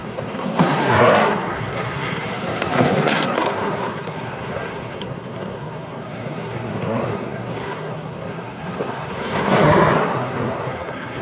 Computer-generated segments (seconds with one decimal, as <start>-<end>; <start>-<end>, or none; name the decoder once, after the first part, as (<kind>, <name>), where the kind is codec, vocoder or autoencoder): 0.0-11.2 (codec, SNAC)